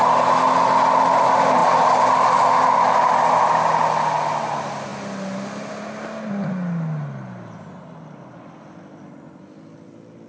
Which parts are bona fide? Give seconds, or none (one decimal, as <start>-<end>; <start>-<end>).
0.0-10.3